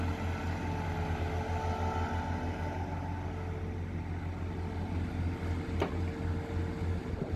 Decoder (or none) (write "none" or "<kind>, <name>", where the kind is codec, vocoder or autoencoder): none